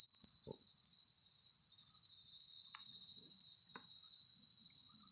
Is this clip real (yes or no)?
yes